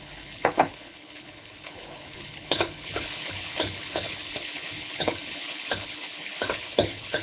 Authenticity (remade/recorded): remade